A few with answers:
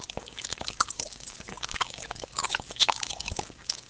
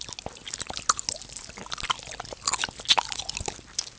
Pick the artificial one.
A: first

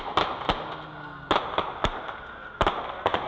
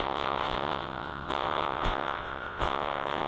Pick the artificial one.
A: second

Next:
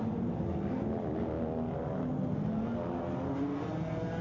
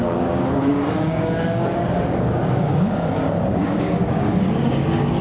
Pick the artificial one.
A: second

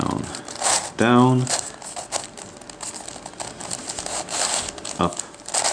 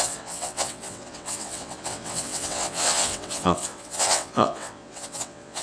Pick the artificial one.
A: second